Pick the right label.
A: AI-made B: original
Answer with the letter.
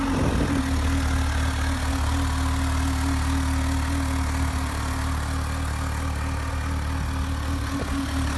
B